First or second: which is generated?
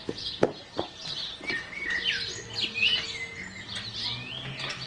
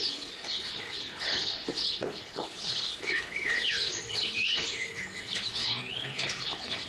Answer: second